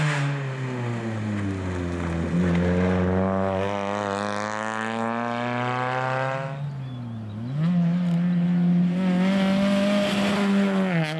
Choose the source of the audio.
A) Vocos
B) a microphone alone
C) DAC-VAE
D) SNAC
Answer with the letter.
B